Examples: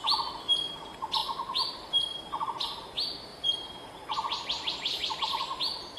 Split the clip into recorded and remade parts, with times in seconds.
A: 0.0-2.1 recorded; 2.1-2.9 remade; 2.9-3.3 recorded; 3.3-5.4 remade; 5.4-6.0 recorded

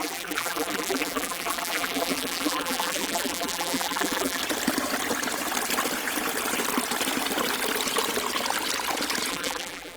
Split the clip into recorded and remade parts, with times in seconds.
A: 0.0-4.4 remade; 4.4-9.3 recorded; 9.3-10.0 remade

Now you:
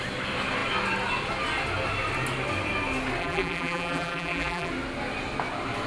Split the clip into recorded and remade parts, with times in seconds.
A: 0.0-3.2 recorded; 3.2-4.7 remade; 4.7-5.9 recorded

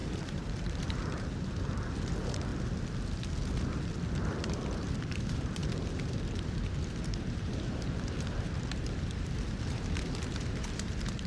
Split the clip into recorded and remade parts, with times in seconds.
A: 0.0-2.5 remade; 2.5-4.3 recorded; 4.3-11.3 remade